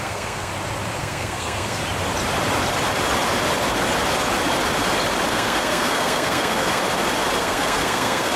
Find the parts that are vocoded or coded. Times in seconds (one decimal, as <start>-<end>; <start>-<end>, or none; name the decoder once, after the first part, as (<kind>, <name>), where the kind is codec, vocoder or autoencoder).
0.0-0.5 (codec, SNAC); 1.0-1.8; 5.3-6.8; 7.4-8.4